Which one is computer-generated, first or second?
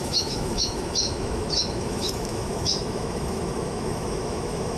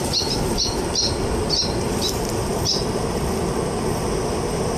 first